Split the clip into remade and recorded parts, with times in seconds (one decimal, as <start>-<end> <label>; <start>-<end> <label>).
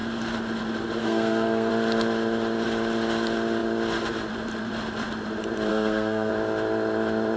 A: 0.0-1.0 recorded; 1.0-1.7 remade; 1.7-5.7 recorded; 5.7-6.3 remade; 6.3-7.4 recorded